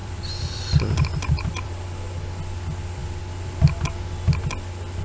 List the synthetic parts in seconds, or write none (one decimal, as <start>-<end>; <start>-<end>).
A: 0.0-1.7